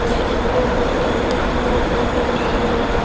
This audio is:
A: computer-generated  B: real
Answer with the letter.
A